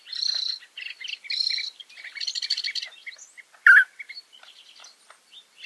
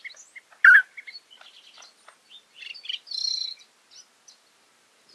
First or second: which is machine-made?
first